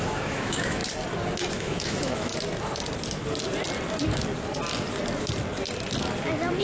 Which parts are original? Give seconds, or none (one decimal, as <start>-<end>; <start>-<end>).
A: 0.8-1.5; 2.3-6.6